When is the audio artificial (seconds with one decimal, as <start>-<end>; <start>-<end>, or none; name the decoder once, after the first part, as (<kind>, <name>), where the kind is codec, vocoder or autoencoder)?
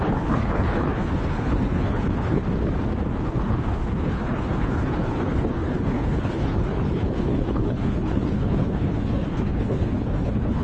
0.0-2.4 (codec, HILCodec); 3.2-10.6